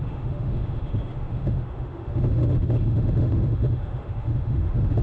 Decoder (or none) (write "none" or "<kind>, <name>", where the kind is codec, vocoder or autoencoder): autoencoder, DAC-VAE